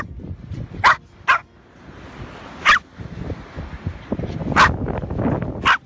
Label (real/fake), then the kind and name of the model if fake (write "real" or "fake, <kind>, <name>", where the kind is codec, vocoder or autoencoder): real